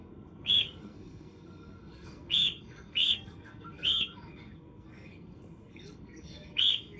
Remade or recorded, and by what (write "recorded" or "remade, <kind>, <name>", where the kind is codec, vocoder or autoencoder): remade, codec, SNAC